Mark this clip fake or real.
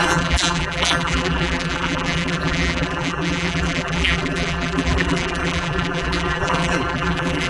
fake